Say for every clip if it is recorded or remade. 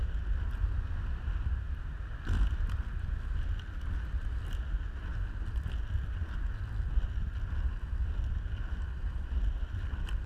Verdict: recorded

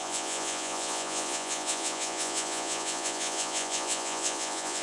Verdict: remade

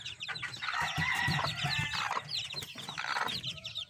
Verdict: remade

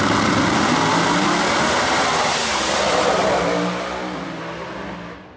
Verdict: recorded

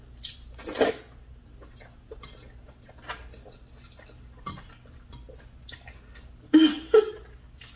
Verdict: recorded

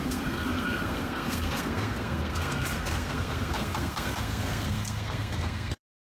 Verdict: remade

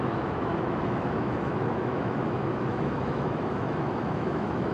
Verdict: remade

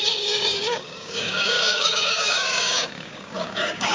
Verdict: remade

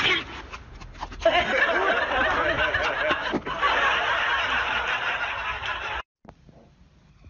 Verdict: recorded